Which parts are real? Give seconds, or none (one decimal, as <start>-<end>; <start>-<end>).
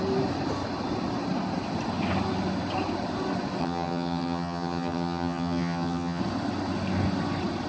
0.0-3.6; 6.2-7.7